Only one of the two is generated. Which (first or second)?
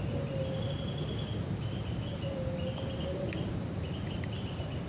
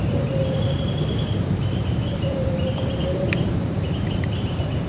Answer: second